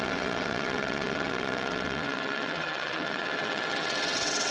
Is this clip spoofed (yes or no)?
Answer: yes